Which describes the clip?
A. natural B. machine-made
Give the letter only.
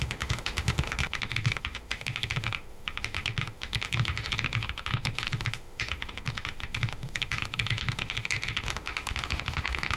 B